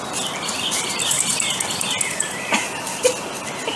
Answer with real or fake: real